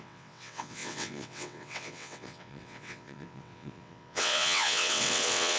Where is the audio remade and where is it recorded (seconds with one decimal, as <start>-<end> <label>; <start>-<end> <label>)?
0.0-5.6 remade